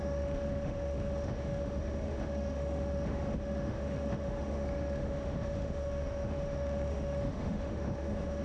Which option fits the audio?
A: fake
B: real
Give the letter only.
A